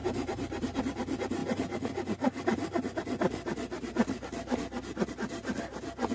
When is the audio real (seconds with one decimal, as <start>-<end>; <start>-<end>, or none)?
0.8-6.1